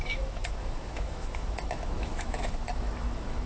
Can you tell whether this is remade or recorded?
remade